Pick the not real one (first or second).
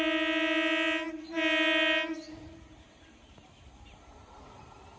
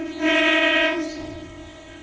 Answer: second